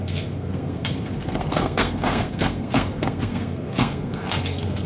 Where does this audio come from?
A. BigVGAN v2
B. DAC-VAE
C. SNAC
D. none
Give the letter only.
C